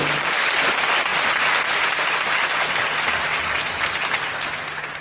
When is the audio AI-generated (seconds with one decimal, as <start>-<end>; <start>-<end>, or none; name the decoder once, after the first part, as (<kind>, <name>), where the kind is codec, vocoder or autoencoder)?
none